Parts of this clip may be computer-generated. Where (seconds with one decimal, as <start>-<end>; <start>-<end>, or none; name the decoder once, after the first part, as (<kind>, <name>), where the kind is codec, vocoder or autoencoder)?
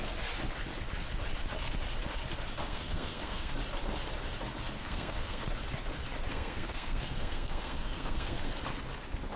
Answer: 2.6-3.5 (codec, SNAC); 4.8-5.4; 6.3-8.5